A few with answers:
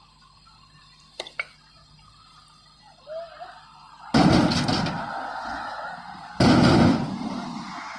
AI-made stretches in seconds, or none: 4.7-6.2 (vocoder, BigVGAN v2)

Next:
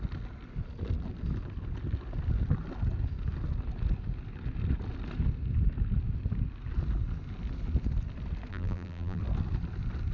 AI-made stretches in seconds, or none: 8.5-9.2 (vocoder, BigVGAN v2)

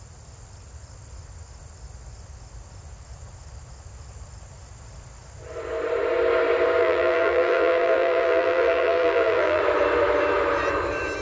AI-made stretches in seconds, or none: 6.8-9.6 (vocoder, BigVGAN v2)

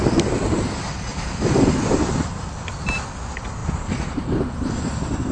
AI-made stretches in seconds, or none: 1.1-1.6 (vocoder, BigVGAN v2); 3.6-4.7